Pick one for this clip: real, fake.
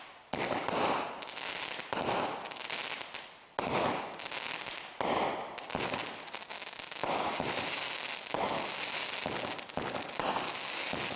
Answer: real